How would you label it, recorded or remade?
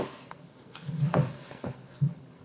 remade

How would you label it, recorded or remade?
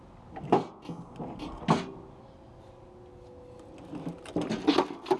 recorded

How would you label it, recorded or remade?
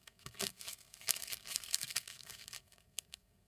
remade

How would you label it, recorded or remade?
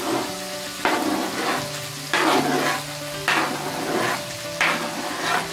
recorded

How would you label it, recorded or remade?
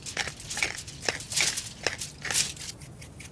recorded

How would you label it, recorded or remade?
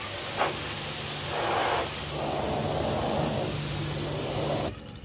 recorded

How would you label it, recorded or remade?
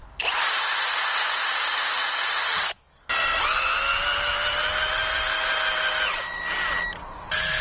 recorded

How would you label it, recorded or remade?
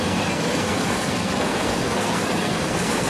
remade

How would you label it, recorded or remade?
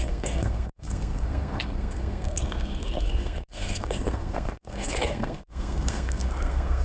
remade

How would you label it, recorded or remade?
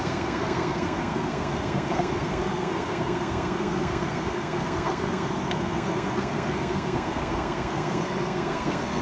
remade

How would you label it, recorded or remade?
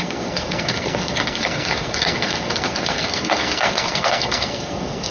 remade